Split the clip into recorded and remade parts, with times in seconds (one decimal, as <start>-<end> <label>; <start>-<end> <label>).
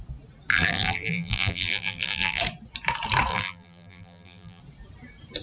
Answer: 0.0-0.5 recorded; 0.5-2.4 remade; 2.4-3.3 recorded; 3.3-4.6 remade; 4.6-5.4 recorded